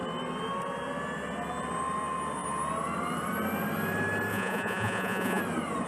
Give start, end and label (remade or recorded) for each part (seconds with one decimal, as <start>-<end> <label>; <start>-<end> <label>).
0.0-4.3 recorded; 4.3-5.4 remade; 5.4-5.9 recorded